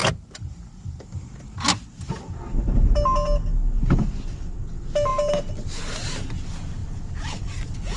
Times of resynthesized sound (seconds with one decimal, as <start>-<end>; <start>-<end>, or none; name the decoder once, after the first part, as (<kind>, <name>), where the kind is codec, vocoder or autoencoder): 0.0-1.4 (vocoder, BigVGAN v2)